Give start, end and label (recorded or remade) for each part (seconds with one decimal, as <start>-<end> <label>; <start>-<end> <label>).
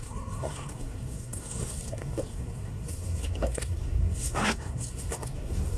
0.0-5.8 remade